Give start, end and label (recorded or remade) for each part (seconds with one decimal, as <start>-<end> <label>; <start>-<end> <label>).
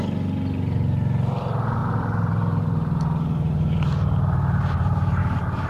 0.0-1.8 recorded; 1.8-5.2 remade; 5.2-5.7 recorded